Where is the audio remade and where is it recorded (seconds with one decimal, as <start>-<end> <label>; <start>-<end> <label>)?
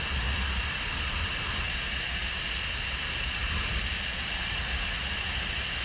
0.0-5.8 recorded